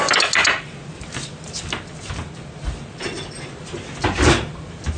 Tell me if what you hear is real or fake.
real